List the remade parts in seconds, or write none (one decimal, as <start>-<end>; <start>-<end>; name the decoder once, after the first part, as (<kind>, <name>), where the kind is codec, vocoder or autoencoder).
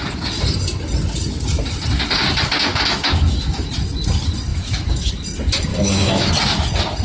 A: 2.7-3.7 (autoencoder, DAC-VAE); 4.5-5.1; 5.7-6.3